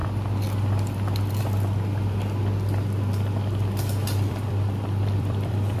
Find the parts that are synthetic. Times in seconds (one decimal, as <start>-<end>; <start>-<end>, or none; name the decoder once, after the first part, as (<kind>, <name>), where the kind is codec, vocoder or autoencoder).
4.3-5.8 (vocoder, BigVGAN v2)